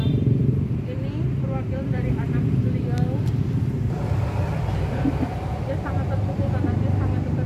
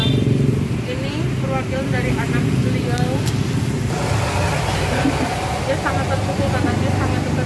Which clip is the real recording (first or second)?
second